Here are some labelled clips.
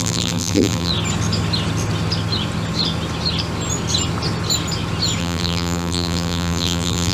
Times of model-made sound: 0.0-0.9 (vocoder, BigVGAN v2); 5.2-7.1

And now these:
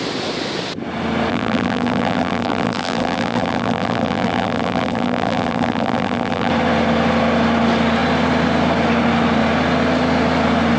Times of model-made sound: 1.3-6.5 (vocoder, BigVGAN v2)

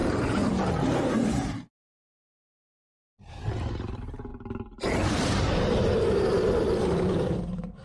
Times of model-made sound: 1.1-7.8 (vocoder, BigVGAN v2)